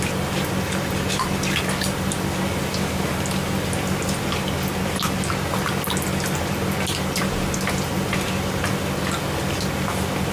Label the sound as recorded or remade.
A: recorded